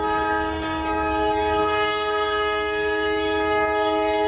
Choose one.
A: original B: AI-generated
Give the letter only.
B